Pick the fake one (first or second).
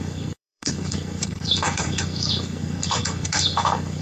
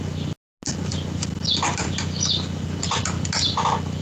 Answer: first